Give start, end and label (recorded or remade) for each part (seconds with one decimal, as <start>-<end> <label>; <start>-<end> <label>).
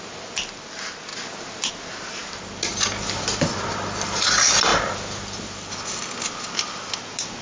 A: 0.0-7.4 recorded